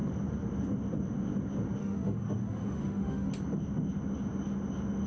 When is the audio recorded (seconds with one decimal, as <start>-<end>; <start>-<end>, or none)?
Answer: 0.0-1.8; 3.3-5.1